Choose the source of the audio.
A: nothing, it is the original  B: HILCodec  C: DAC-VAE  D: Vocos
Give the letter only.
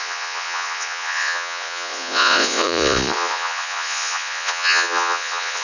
D